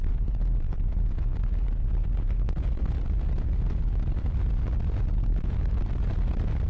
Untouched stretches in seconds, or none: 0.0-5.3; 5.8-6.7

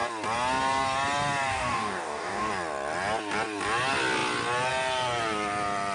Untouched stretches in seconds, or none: 0.0-1.5; 2.5-5.9